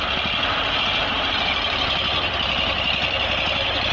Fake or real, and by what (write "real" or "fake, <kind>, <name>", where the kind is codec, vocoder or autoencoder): real